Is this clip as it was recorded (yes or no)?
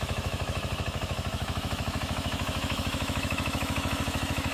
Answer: no